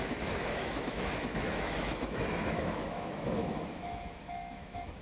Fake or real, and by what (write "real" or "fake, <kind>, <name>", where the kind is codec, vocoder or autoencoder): fake, autoencoder, DAC-VAE